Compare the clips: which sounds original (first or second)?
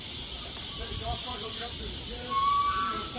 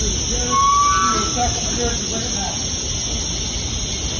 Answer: second